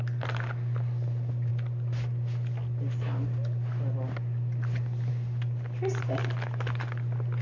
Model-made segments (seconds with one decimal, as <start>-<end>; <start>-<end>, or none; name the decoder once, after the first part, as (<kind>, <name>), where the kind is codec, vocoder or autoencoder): none